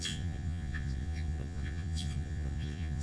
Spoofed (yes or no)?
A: yes